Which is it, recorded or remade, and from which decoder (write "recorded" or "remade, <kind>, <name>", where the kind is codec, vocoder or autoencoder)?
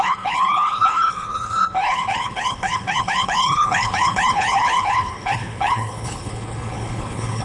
remade, codec, HILCodec